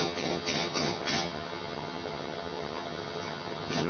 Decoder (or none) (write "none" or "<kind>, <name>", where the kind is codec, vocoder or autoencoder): vocoder, HiFi-GAN